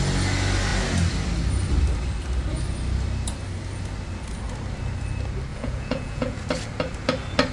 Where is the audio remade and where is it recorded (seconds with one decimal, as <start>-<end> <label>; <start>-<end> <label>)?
0.0-5.5 recorded; 5.5-6.4 remade; 6.4-7.5 recorded